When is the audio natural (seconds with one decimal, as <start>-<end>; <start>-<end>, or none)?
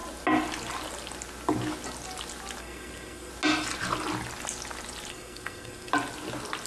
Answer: 0.0-2.6; 3.3-5.1; 5.9-6.7